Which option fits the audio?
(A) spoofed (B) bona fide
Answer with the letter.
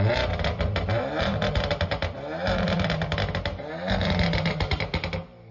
B